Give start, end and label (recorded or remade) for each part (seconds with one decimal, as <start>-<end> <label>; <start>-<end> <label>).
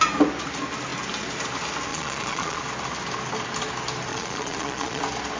0.0-1.9 recorded; 1.9-2.6 remade; 2.6-4.1 recorded; 4.1-5.0 remade; 5.0-5.4 recorded